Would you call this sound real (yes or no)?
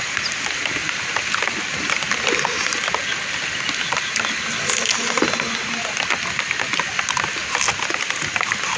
yes